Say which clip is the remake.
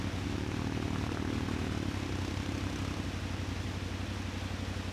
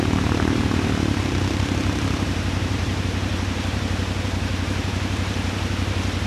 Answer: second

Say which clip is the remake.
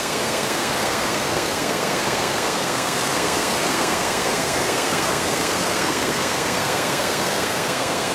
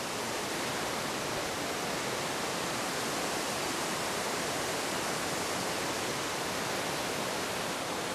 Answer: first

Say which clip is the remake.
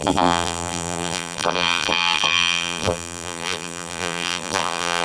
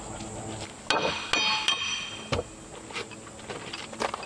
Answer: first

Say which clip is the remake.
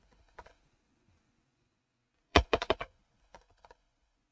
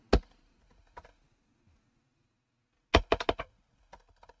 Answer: first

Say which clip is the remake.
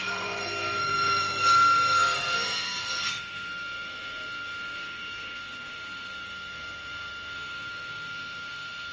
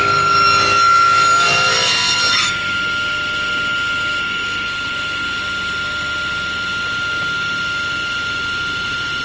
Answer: first